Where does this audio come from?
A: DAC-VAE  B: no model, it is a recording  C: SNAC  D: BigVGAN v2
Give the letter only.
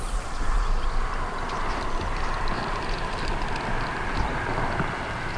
B